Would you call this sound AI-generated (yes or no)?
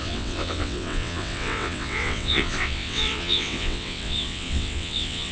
yes